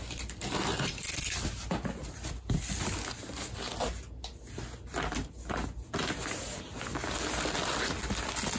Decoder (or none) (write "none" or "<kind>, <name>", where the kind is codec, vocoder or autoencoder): none